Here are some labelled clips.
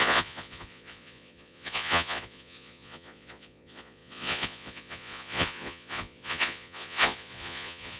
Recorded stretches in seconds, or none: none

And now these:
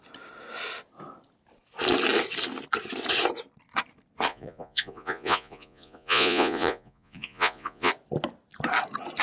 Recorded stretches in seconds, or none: 0.0-4.3; 7.9-9.2

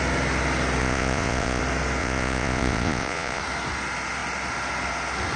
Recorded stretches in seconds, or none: 0.0-0.8; 1.6-2.0; 3.4-5.4